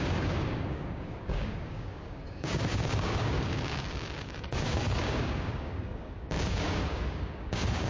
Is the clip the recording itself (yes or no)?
no